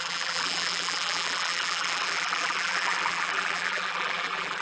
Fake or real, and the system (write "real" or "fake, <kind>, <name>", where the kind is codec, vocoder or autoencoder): fake, vocoder, BigVGAN v2